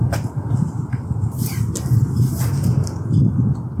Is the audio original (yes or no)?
yes